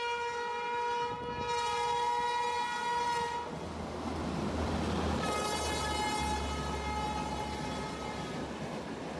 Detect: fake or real real